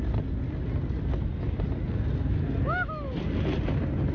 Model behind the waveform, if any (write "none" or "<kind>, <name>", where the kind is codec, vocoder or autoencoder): none